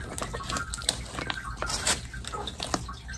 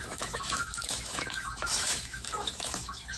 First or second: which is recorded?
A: first